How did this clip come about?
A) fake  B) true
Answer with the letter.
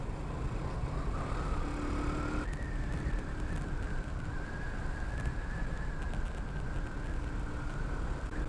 B